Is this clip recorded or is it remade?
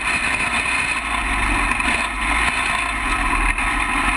recorded